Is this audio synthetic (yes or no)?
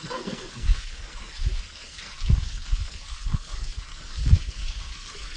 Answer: yes